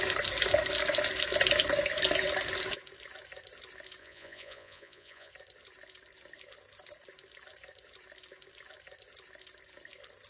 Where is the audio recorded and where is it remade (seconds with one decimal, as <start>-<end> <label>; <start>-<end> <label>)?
0.0-4.0 recorded; 4.0-5.3 remade; 5.3-10.3 recorded